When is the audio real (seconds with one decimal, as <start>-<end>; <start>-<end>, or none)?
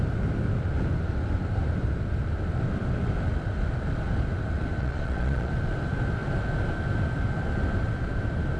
0.0-4.8; 5.5-8.6